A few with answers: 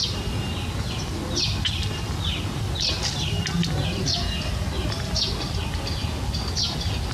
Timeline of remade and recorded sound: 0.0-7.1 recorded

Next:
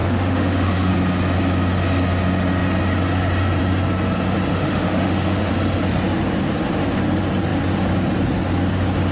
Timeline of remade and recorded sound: 0.0-0.9 remade; 0.9-4.5 recorded; 4.5-5.5 remade; 5.5-9.1 recorded